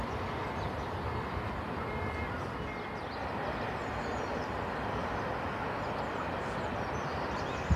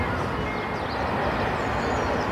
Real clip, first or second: second